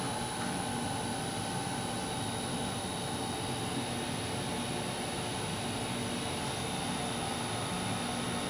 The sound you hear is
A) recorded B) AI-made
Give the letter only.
A